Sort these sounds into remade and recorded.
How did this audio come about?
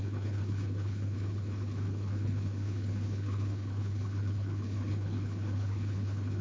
remade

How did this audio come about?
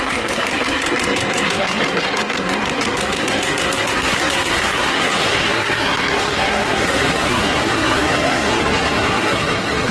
remade